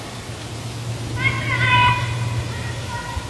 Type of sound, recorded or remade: recorded